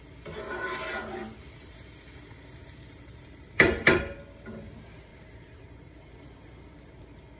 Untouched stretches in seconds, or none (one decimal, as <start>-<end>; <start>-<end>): 0.0-1.2; 4.0-5.1; 7.0-7.4